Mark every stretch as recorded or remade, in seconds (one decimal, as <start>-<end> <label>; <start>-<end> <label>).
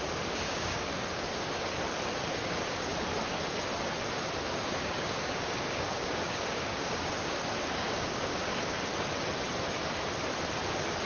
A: 0.0-1.7 remade; 1.7-2.3 recorded; 2.3-2.9 remade; 2.9-4.5 recorded; 4.5-8.9 remade; 8.9-11.1 recorded